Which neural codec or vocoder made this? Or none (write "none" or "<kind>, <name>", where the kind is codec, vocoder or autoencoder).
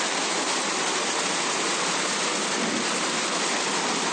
none